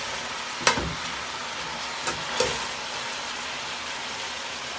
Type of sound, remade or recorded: recorded